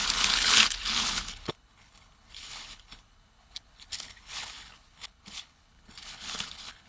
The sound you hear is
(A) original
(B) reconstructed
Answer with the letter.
B